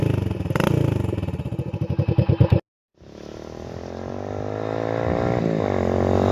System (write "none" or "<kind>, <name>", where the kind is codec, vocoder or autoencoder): none